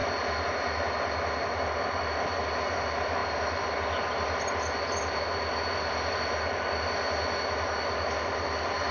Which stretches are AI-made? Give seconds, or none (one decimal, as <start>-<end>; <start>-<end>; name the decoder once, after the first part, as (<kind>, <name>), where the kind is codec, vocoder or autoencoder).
none